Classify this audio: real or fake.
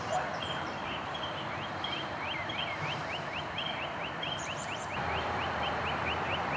fake